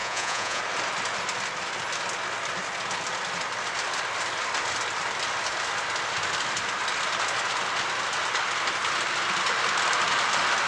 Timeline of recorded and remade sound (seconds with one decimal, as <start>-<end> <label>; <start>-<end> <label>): 0.0-0.6 remade; 0.6-10.7 recorded